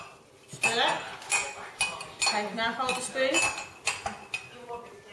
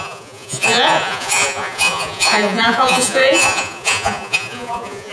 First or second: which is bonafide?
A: first